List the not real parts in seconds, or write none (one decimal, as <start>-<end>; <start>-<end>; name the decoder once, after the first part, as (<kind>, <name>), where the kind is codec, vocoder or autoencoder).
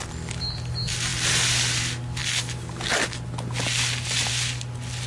none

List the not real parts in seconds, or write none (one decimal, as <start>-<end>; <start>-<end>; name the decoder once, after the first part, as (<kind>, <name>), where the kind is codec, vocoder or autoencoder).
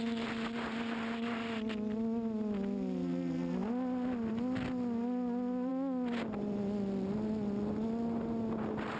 none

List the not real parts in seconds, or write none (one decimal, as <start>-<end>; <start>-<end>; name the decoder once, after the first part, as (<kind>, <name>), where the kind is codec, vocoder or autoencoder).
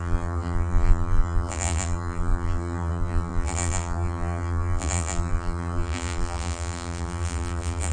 0.0-7.9 (vocoder, BigVGAN v2)